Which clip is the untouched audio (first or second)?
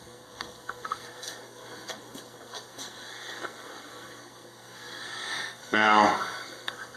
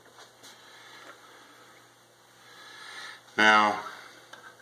second